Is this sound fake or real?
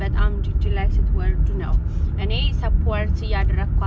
real